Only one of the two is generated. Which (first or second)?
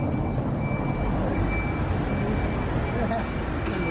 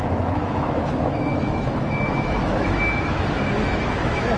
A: second